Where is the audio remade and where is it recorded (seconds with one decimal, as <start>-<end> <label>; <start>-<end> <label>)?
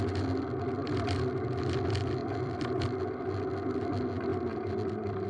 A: 0.0-0.8 recorded; 0.8-1.6 remade; 1.6-2.2 recorded; 2.2-3.0 remade; 3.0-5.3 recorded